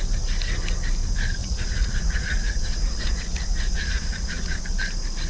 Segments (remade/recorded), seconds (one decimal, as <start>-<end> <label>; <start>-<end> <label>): 0.0-1.4 recorded; 1.4-4.6 remade; 4.6-5.3 recorded